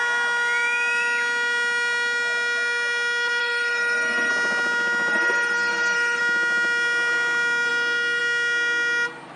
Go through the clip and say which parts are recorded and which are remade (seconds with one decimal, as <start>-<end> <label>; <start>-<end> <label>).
0.0-3.4 recorded; 3.4-4.3 remade; 4.3-5.1 recorded; 5.1-6.2 remade; 6.2-9.4 recorded